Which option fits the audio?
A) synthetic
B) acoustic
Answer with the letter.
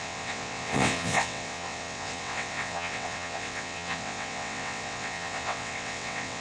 A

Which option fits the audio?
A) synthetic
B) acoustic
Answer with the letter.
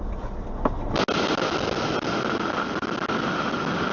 B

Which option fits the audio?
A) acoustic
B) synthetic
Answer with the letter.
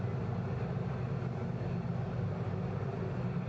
A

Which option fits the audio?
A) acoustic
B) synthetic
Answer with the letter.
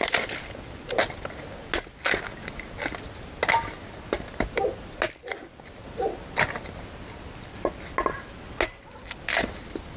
A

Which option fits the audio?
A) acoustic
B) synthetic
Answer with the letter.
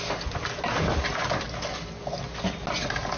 A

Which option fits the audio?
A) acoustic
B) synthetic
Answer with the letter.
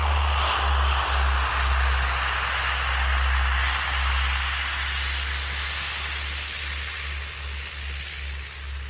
A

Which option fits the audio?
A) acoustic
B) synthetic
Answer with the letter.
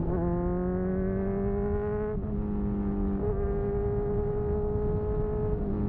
A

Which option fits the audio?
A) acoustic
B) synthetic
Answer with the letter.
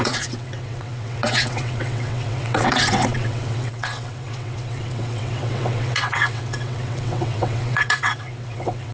B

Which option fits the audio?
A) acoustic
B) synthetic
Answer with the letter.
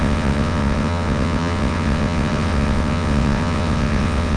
B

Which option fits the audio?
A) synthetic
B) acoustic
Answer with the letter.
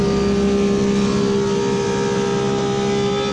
B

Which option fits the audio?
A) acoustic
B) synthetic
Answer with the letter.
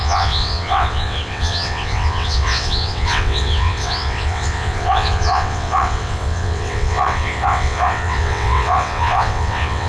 B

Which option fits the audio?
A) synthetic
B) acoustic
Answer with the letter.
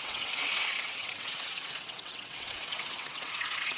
A